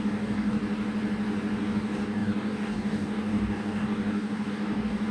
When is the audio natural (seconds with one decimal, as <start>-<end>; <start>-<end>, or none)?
0.6-1.6